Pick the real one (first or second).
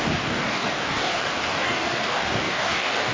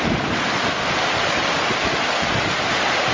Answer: second